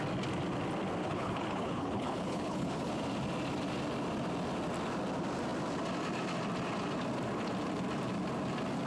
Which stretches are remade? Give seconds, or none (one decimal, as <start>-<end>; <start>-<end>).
1.0-2.9

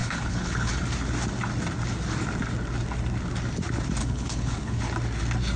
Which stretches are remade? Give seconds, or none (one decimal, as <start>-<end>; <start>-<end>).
0.0-0.7; 4.0-4.8

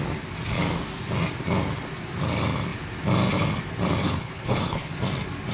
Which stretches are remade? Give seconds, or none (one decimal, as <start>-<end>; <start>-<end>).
4.0-4.9

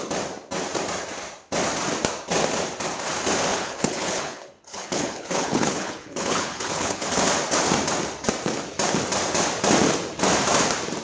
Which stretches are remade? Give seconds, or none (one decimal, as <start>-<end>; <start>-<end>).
3.5-7.2

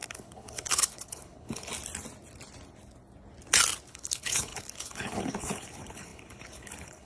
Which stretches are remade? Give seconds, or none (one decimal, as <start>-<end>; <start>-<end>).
0.0-1.7; 3.9-7.1